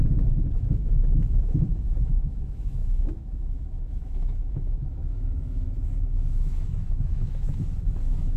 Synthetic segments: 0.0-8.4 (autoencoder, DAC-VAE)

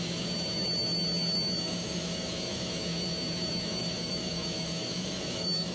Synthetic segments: 0.0-5.7 (autoencoder, DAC-VAE)

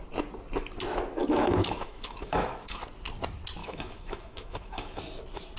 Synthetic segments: 1.2-2.8 (autoencoder, DAC-VAE); 3.6-5.0

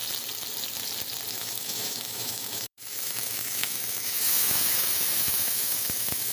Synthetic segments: 1.3-6.3 (autoencoder, DAC-VAE)

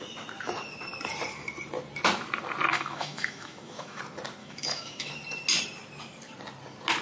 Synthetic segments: 2.7-4.0 (autoencoder, DAC-VAE); 4.4-5.1

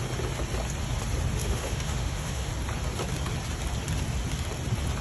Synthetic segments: 1.4-2.5 (autoencoder, DAC-VAE)

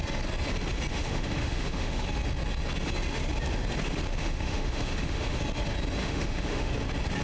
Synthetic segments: 0.9-2.0 (autoencoder, DAC-VAE); 4.2-5.4; 6.0-6.7

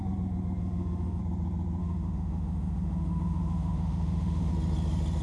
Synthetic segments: 0.6-1.2 (autoencoder, DAC-VAE); 1.8-4.5